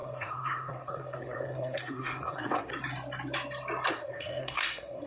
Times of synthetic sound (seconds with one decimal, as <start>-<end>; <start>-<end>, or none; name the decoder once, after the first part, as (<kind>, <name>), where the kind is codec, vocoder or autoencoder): 0.0-2.7 (codec, SNAC); 3.9-5.1